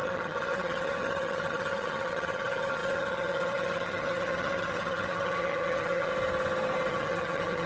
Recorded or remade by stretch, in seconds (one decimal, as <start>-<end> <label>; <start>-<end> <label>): 0.0-6.1 remade; 6.1-6.9 recorded; 6.9-7.7 remade